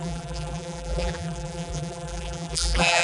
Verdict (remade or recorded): remade